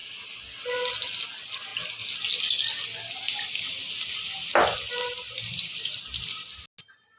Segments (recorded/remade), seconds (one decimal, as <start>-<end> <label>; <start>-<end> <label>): 0.0-7.2 recorded